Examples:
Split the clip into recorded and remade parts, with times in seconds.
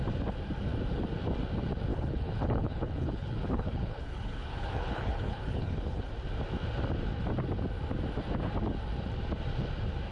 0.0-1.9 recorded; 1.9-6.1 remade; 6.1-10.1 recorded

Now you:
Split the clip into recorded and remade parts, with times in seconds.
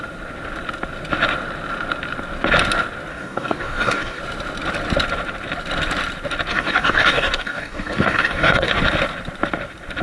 0.0-3.1 recorded; 3.1-4.2 remade; 4.2-6.5 recorded; 6.5-8.7 remade; 8.7-10.0 recorded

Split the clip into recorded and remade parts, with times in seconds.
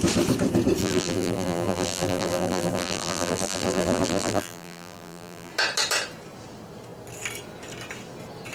0.0-0.8 recorded; 0.8-5.5 remade; 5.5-8.5 recorded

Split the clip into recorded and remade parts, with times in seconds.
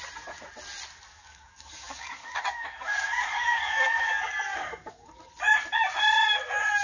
0.0-1.1 recorded; 1.1-5.2 remade; 5.2-6.8 recorded